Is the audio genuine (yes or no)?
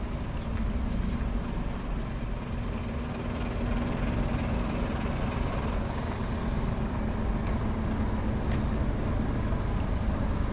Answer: yes